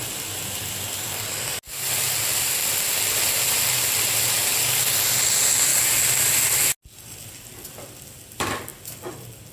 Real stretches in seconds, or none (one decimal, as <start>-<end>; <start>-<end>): 0.0-9.5